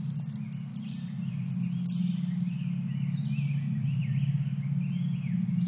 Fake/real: real